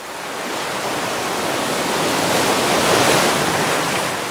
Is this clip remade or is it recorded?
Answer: recorded